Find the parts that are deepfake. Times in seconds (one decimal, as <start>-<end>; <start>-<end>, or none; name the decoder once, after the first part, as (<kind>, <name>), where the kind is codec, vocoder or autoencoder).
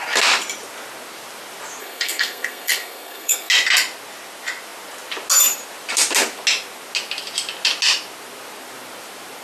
1.8-3.5 (codec, SNAC)